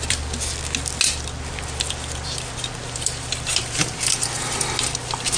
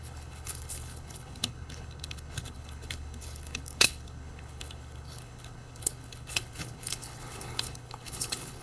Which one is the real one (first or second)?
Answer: first